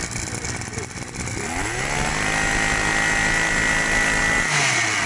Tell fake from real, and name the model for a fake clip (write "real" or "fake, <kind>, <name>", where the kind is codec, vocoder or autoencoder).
real